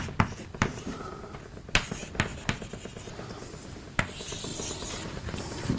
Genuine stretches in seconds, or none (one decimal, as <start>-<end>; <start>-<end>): 2.3-4.0